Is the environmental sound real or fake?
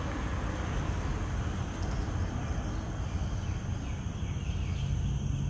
real